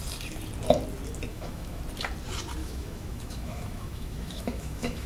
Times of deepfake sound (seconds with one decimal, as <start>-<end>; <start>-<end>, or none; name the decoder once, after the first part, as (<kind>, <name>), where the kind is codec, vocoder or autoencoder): 1.3-1.8 (autoencoder, DAC-VAE); 2.6-5.1

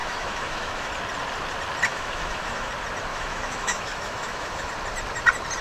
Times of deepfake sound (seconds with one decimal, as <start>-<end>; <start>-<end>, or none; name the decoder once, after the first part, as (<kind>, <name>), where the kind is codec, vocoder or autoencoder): 0.0-0.9 (autoencoder, DAC-VAE); 1.9-2.7; 3.1-4.7

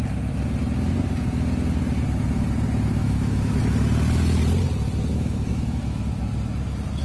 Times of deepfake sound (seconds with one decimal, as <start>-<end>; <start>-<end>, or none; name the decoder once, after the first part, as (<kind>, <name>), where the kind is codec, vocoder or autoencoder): 3.0-3.6 (autoencoder, DAC-VAE); 5.1-6.2

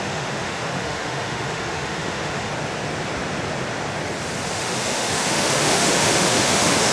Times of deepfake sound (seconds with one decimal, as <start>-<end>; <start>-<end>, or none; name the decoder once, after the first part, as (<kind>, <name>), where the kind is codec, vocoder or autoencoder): 0.0-2.5 (autoencoder, DAC-VAE); 4.5-6.9

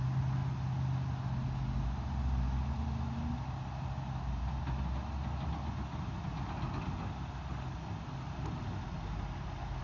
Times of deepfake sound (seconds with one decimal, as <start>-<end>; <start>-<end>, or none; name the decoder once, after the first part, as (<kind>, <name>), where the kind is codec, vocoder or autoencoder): none